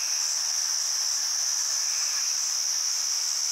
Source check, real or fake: real